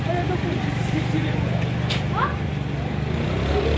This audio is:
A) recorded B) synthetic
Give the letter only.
A